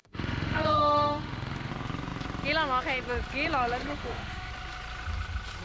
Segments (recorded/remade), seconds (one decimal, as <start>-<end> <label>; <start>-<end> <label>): 0.0-1.7 remade; 1.7-3.8 recorded; 3.8-4.5 remade; 4.5-5.6 recorded